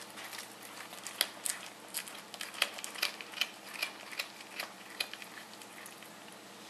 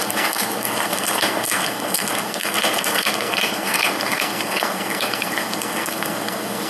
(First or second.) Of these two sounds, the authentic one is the first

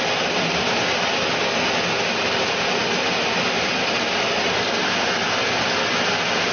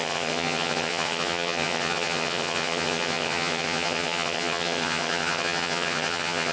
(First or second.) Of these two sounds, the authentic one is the first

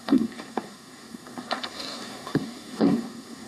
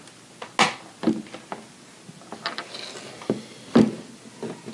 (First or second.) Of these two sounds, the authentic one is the second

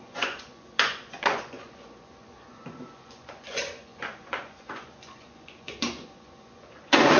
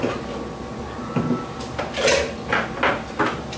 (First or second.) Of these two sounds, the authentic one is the second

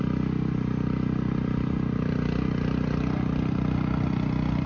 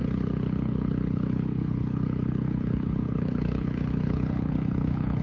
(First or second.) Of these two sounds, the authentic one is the first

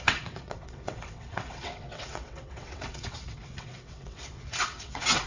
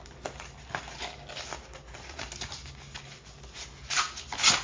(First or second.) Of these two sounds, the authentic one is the second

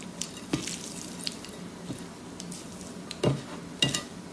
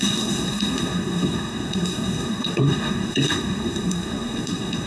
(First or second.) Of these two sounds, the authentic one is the first